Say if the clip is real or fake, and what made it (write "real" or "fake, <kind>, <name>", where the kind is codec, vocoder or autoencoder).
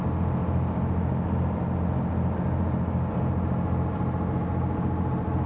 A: real